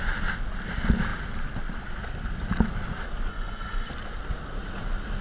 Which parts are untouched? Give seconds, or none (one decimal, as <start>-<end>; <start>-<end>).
0.0-3.3; 3.9-5.2